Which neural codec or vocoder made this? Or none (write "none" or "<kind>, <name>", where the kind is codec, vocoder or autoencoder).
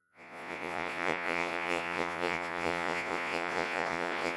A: vocoder, Vocos